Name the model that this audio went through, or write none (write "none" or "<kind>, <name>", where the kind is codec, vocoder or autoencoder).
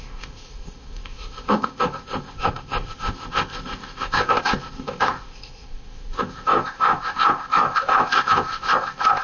codec, ZipCodec